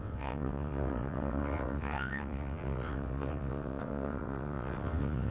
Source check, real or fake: fake